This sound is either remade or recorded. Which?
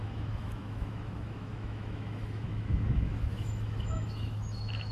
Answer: remade